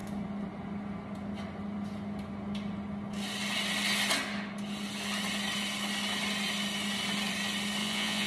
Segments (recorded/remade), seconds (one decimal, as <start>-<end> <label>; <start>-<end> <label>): 0.0-7.8 recorded; 7.8-8.3 remade